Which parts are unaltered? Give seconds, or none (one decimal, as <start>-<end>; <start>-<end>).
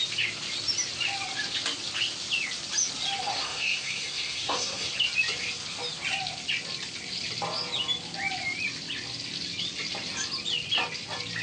0.0-3.3; 4.9-11.4